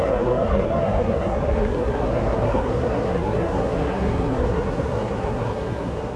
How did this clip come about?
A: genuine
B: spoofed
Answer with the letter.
B